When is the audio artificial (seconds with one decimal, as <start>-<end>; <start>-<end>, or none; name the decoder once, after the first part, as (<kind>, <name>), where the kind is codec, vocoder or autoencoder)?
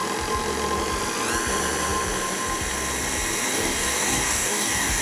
3.5-5.0 (codec, DAC)